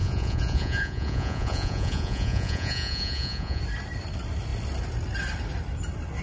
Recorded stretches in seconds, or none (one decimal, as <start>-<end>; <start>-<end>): 3.6-6.2